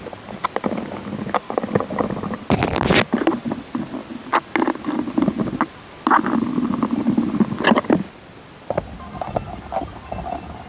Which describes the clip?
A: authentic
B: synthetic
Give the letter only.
A